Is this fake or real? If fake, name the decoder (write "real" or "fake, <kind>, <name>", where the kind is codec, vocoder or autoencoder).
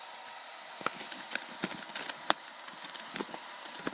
real